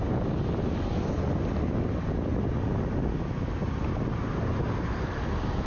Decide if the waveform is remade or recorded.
recorded